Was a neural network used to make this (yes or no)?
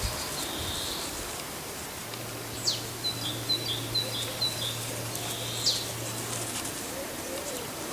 no